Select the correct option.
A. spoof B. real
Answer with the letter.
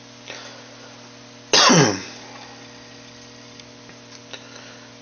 B